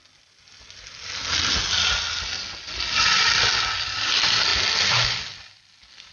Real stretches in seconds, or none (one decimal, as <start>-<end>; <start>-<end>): 0.0-6.1